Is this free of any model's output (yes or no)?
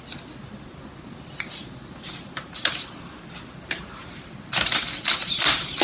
yes